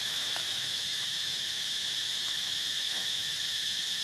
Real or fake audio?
fake